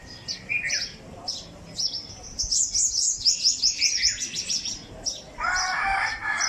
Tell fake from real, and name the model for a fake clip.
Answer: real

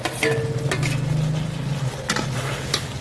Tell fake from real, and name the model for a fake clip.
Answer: real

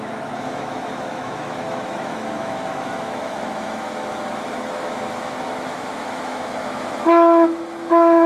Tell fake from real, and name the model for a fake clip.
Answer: fake, autoencoder, DAC-VAE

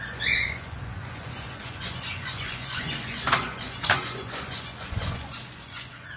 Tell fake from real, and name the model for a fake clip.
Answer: fake, vocoder, Vocos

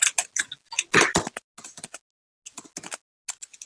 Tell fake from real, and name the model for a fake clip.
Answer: real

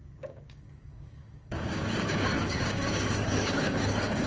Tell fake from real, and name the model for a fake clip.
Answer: fake, codec, DAC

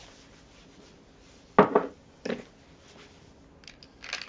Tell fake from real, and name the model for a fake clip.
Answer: real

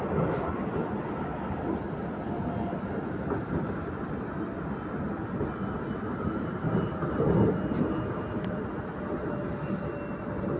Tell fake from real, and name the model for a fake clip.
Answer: real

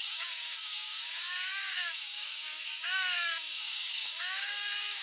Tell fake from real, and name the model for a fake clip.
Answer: fake, codec, DAC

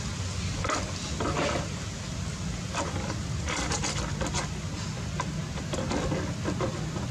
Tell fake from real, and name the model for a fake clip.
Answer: real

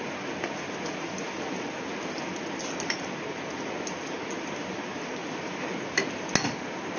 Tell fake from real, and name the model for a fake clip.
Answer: real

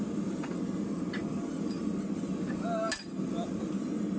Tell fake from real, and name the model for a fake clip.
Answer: real